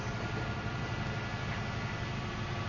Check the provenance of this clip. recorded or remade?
recorded